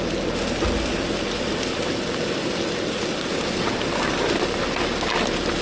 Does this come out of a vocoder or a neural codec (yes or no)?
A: no